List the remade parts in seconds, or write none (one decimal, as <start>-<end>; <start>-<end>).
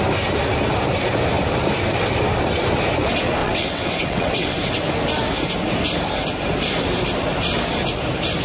3.4-4.6